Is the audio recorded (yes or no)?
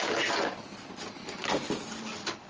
yes